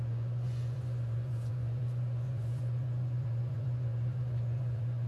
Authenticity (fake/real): fake